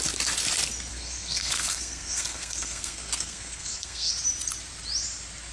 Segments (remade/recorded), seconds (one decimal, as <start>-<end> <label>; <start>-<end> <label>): 0.0-0.9 recorded; 0.9-4.1 remade; 4.1-5.5 recorded